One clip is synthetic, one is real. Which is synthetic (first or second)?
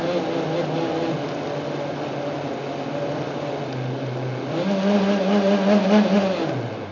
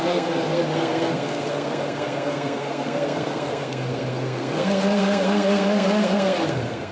second